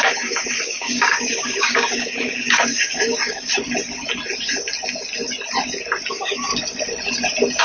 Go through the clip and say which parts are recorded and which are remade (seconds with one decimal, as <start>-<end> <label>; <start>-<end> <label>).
0.0-3.5 remade; 3.5-6.1 recorded; 6.1-6.5 remade; 6.5-7.6 recorded

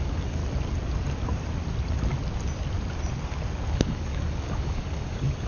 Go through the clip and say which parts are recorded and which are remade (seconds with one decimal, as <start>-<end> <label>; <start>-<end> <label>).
0.0-0.4 remade; 0.4-3.7 recorded; 3.7-5.5 remade

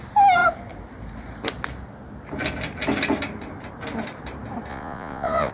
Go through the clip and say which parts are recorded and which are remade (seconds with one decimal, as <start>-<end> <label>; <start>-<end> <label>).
0.0-4.7 recorded; 4.7-5.5 remade

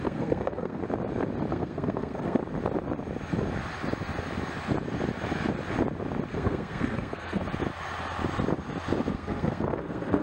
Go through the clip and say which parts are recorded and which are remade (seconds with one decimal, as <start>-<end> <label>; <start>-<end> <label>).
0.0-0.8 remade; 0.8-1.5 recorded; 1.5-2.4 remade; 2.4-6.3 recorded; 6.3-7.4 remade; 7.4-9.1 recorded; 9.1-10.2 remade